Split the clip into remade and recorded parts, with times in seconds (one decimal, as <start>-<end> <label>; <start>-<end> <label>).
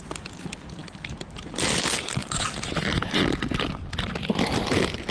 0.0-5.1 recorded